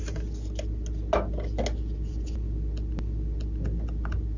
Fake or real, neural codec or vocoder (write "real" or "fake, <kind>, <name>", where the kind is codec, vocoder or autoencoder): real